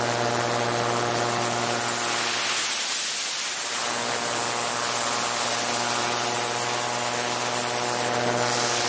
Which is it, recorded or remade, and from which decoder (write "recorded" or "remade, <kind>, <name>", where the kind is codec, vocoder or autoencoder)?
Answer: recorded